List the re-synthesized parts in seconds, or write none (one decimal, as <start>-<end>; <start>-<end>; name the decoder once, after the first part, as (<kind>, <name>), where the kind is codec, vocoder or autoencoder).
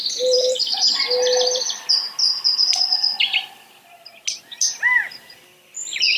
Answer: 0.0-0.9 (vocoder, BigVGAN v2)